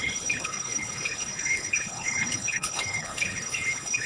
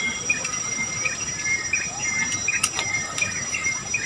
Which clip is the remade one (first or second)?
first